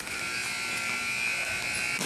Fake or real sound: real